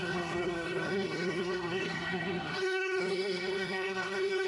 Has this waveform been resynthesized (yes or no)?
yes